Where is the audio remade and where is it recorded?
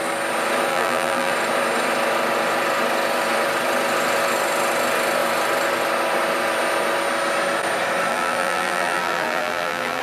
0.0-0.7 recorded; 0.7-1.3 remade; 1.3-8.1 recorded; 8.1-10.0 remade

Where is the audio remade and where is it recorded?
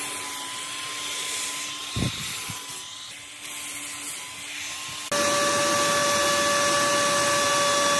0.0-1.8 recorded; 1.8-2.7 remade; 2.7-8.0 recorded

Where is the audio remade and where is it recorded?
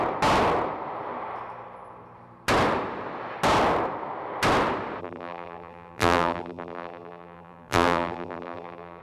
0.0-5.0 recorded; 5.0-9.0 remade